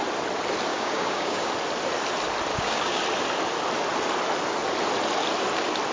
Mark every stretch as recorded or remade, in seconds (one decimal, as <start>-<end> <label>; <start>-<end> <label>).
0.0-0.7 recorded; 0.7-1.5 remade; 1.5-2.5 recorded; 2.5-3.0 remade; 3.0-5.9 recorded